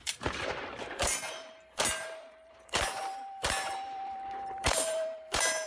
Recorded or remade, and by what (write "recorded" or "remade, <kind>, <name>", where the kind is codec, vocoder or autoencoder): remade, vocoder, BigVGAN v2